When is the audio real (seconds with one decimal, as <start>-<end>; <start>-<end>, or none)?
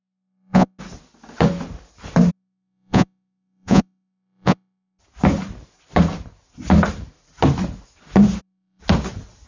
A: 0.8-2.3; 5.0-8.4; 8.8-9.5